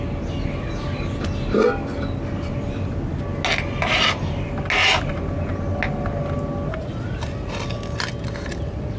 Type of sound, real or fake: real